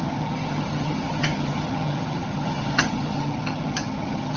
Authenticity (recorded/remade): remade